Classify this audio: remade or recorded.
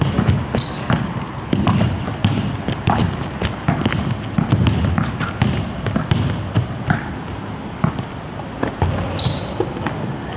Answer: recorded